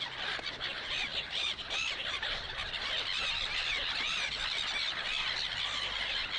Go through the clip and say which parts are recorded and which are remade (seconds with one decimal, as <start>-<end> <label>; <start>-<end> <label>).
0.0-6.4 remade